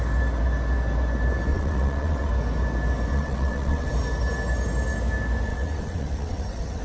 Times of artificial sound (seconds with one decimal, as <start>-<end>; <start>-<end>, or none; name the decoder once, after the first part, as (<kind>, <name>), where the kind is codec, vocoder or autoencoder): 1.5-2.3 (vocoder, WaveNeXt); 3.1-3.9; 5.5-6.8